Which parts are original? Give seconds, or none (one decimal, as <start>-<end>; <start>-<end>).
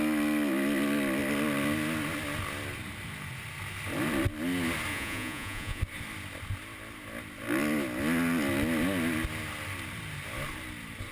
0.0-4.9; 5.8-11.1